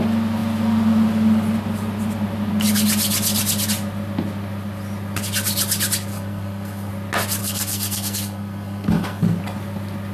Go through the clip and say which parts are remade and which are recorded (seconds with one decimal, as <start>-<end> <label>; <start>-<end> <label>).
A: 0.0-6.1 recorded; 6.1-6.9 remade; 6.9-7.4 recorded; 7.4-9.4 remade; 9.4-10.1 recorded